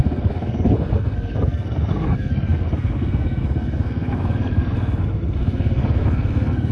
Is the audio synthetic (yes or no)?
yes